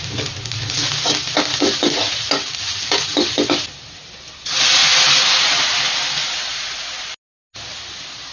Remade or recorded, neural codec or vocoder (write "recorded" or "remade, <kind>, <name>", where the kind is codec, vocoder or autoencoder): recorded